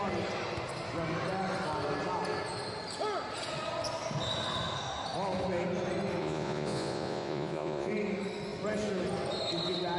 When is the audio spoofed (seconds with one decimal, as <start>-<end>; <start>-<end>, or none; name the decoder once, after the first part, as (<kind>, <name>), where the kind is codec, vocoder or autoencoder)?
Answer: 6.2-7.9 (vocoder, Vocos)